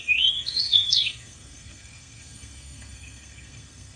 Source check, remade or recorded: remade